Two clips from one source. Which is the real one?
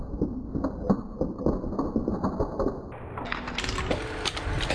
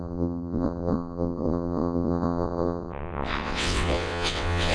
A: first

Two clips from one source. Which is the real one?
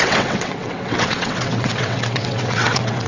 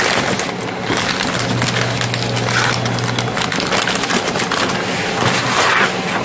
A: second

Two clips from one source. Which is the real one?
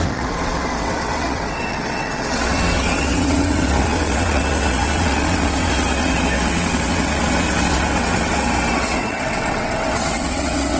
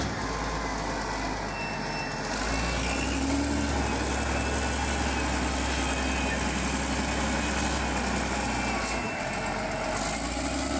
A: second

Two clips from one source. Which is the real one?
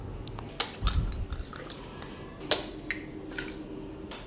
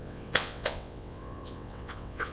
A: first